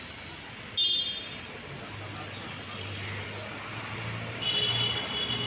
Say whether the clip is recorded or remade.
recorded